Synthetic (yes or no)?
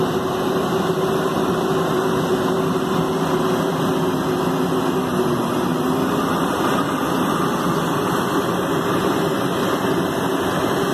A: no